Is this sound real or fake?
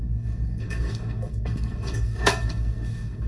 fake